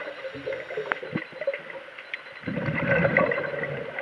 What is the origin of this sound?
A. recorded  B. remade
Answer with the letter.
A